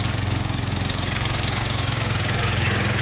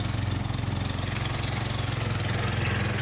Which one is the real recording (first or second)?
second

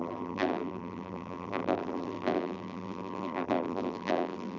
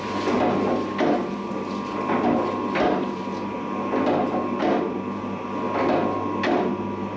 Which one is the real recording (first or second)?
second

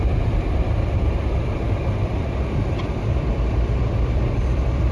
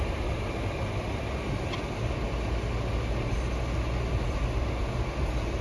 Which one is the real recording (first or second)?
second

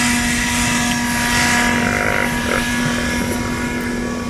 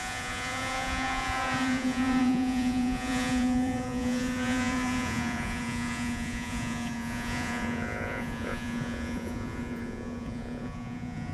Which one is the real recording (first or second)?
first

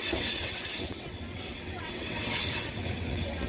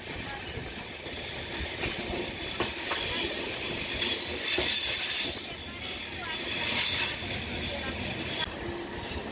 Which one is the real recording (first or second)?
second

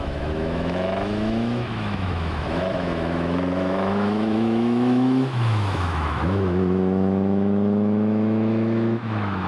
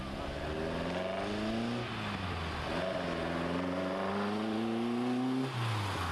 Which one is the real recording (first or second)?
second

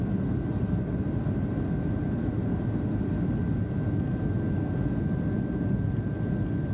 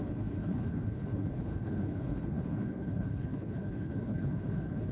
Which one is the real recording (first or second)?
first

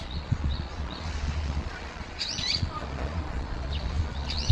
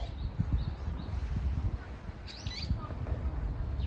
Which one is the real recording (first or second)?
second